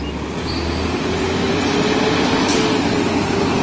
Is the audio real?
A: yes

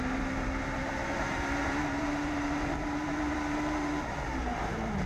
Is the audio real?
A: no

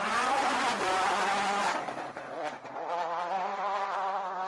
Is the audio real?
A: no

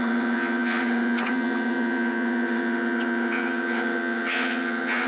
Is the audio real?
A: no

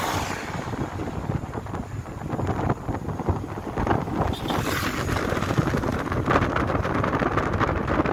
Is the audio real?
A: yes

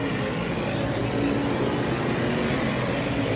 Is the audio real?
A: yes